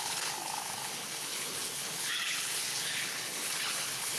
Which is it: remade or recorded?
remade